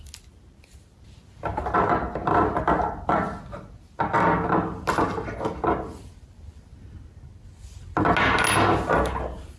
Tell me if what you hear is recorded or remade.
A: recorded